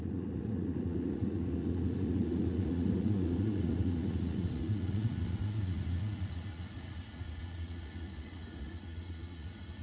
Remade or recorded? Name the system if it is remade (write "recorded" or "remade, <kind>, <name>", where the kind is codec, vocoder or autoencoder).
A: remade, vocoder, Vocos